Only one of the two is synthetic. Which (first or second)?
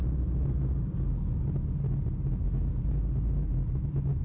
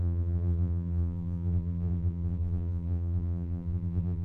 second